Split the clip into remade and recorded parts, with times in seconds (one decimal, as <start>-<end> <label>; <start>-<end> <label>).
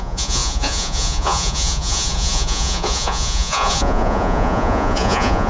0.0-5.5 remade